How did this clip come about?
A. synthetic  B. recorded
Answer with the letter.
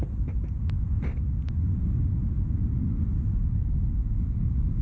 B